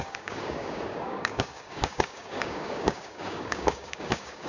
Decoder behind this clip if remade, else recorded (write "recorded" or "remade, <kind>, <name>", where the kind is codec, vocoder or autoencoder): remade, codec, DAC